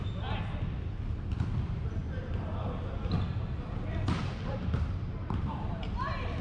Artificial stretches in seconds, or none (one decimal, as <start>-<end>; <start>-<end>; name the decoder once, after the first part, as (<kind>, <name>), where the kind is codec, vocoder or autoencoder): 2.0-2.6 (vocoder, BigVGAN v2); 4.2-6.0